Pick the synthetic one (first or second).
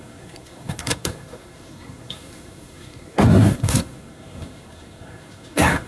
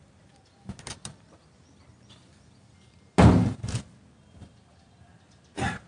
first